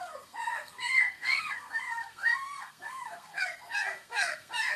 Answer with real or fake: fake